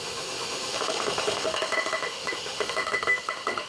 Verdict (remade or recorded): remade